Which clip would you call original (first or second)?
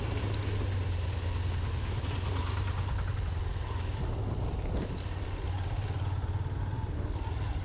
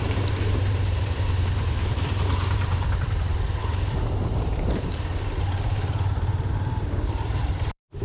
first